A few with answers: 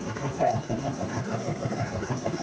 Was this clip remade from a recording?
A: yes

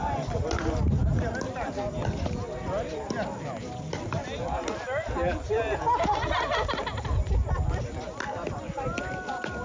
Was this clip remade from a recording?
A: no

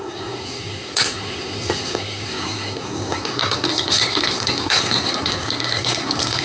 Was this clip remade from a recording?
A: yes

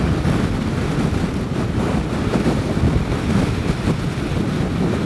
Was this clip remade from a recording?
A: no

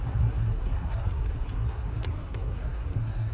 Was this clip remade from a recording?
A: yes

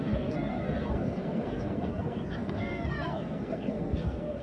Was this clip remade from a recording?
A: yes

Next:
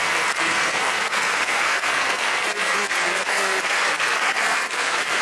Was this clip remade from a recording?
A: yes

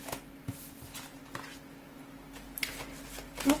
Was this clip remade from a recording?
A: no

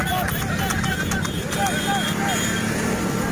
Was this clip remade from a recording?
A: no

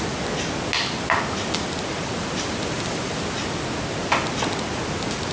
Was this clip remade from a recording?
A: no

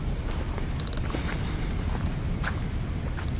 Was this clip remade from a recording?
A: no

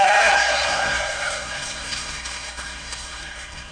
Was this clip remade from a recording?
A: yes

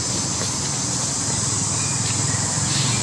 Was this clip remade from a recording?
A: no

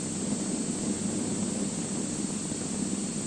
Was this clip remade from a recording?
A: no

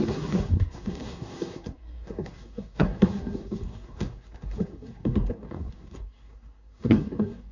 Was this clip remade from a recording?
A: yes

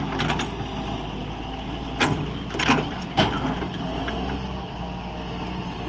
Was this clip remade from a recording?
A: no